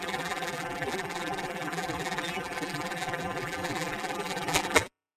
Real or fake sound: fake